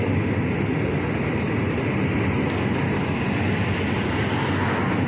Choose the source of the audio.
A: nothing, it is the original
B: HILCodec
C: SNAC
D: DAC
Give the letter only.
A